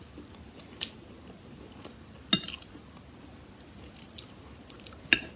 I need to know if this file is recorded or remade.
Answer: recorded